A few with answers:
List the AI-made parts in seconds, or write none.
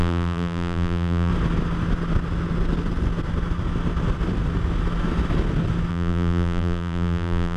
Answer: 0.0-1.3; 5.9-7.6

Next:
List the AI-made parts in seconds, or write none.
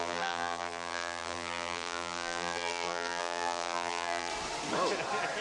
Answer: 0.0-4.3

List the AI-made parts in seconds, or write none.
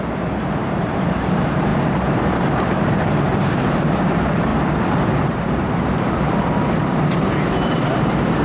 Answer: 0.0-4.5; 5.0-8.4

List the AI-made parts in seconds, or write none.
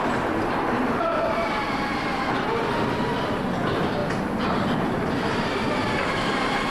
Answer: 0.0-4.0; 5.1-6.7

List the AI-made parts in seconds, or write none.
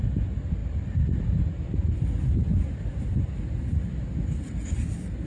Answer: none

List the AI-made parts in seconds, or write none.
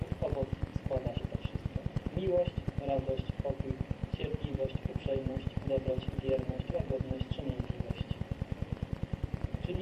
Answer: 0.7-1.2; 4.0-7.4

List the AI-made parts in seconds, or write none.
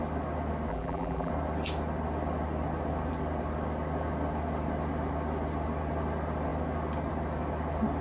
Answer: 0.7-1.3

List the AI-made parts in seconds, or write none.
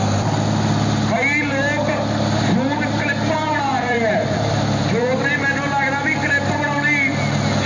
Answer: 3.7-5.3